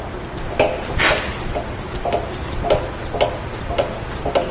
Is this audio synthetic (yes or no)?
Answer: no